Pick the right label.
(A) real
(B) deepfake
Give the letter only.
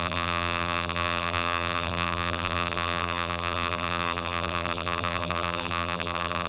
B